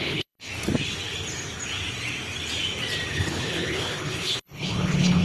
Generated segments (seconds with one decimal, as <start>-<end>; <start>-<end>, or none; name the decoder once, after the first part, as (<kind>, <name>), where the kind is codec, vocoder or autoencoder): 0.0-0.5 (codec, HILCodec); 3.1-5.2